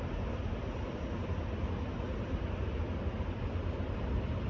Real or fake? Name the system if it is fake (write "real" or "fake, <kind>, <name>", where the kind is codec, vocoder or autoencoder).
real